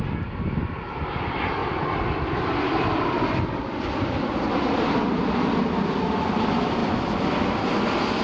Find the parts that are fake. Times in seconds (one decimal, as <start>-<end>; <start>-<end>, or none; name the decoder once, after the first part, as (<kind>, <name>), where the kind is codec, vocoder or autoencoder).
none